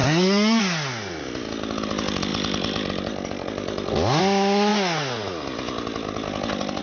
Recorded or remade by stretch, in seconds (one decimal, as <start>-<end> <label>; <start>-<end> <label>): 0.0-0.6 remade; 0.6-6.8 recorded